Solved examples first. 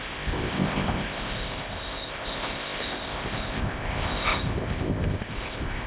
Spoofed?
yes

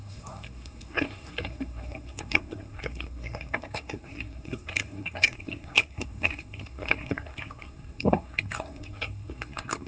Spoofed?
yes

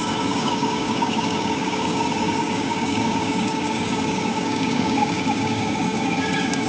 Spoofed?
yes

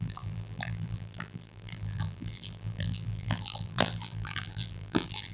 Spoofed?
yes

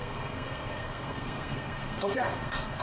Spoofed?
yes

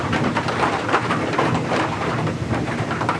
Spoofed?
yes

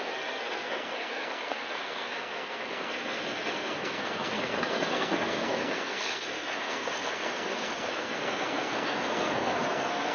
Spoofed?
yes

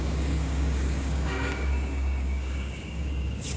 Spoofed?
yes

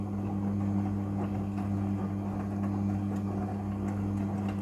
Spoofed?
no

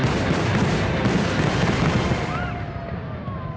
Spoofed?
no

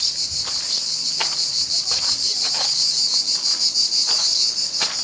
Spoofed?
no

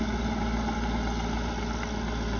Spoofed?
no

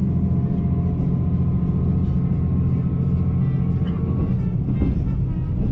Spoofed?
no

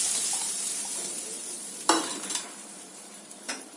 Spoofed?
yes